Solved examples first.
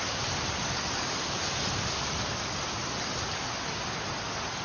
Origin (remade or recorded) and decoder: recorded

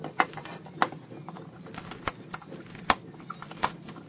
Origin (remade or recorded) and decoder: recorded